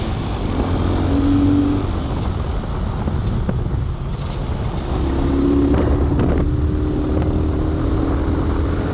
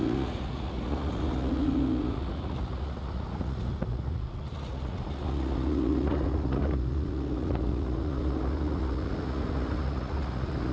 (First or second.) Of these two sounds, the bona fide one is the first